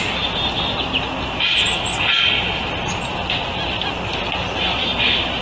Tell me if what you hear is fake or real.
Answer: real